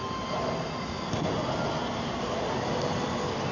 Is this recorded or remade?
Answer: recorded